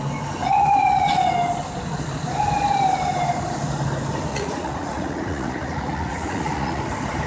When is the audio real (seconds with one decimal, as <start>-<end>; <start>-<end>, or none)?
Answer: 0.0-0.4; 1.3-4.3; 6.8-7.3